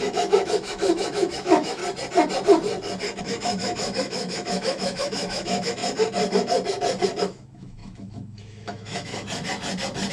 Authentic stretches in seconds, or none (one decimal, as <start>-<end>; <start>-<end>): 1.8-3.2; 5.8-7.2; 9.1-10.1